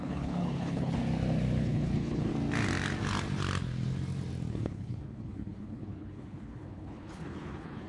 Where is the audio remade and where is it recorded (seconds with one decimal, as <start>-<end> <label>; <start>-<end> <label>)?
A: 0.0-1.0 remade; 1.0-1.6 recorded; 1.6-2.3 remade; 2.3-4.5 recorded; 4.5-7.9 remade